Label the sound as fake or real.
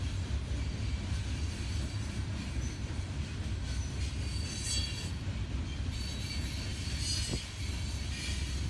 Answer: real